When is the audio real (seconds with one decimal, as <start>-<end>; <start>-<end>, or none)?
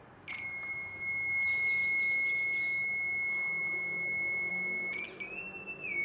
0.0-6.0